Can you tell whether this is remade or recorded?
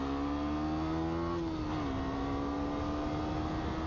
recorded